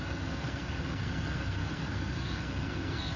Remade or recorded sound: remade